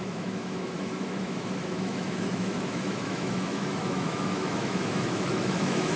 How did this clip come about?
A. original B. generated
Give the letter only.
B